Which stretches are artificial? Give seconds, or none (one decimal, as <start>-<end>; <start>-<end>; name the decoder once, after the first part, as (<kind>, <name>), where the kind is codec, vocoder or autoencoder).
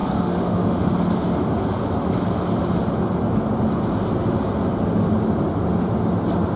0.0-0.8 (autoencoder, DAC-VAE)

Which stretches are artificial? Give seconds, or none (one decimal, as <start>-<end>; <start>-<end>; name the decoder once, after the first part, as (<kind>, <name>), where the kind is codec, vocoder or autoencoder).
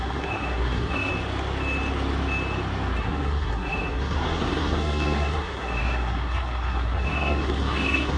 0.0-1.1 (codec, SNAC); 3.0-8.2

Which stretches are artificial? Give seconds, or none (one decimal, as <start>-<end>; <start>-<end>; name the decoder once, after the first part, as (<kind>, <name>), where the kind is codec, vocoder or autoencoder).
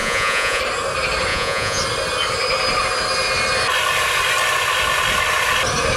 0.0-0.6 (vocoder, Vocos); 1.3-1.8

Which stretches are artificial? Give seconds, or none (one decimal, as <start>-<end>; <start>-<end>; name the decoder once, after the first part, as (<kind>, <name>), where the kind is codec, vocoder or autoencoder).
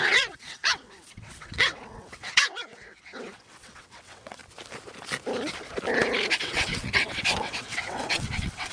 0.0-4.4 (vocoder, WaveNeXt); 6.4-8.7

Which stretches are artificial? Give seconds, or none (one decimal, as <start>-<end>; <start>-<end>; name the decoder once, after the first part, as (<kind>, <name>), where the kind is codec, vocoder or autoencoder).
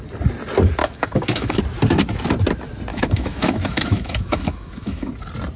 0.8-1.6 (autoencoder, DAC-VAE); 2.9-5.1